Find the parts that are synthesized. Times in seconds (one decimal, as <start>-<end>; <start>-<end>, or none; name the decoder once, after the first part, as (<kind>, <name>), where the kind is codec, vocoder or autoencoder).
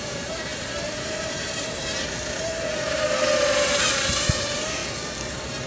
0.0-4.8 (vocoder, BigVGAN v2)